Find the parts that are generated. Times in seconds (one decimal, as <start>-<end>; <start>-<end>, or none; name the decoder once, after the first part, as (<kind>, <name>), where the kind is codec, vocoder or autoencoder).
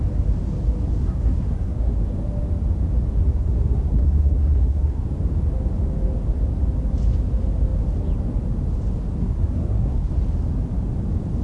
1.0-2.0 (codec, SNAC); 3.3-5.0; 9.2-10.1